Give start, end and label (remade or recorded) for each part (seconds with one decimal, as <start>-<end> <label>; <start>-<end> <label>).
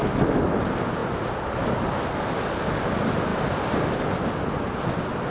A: 0.0-5.3 recorded